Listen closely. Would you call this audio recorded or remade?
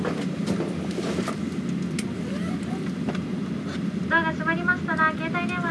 recorded